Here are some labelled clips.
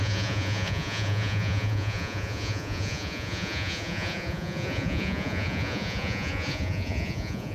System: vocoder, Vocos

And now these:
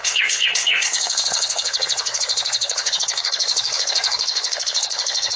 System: codec, SNAC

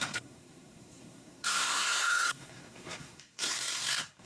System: codec, SNAC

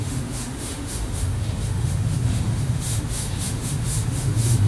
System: autoencoder, DAC-VAE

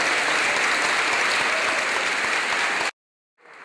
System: none